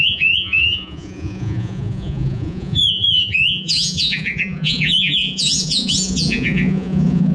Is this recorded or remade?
remade